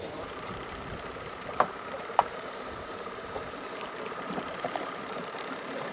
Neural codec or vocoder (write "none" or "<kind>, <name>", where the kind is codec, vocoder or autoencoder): vocoder, BigVGAN v2